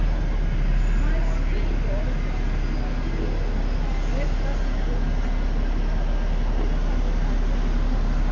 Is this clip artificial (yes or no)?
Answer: no